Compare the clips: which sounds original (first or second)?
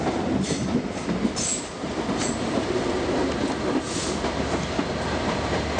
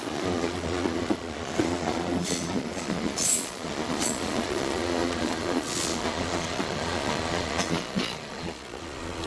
first